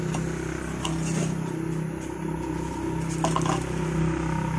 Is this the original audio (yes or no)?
yes